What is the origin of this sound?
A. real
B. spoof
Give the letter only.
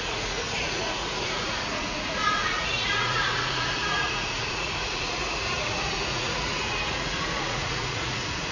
B